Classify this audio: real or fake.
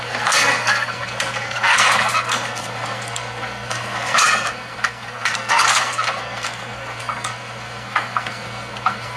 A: fake